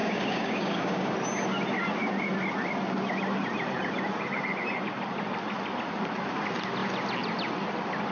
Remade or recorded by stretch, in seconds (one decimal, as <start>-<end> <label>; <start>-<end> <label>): 0.0-1.1 remade; 1.1-8.1 recorded